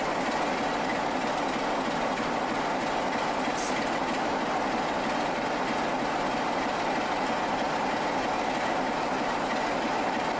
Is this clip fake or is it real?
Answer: real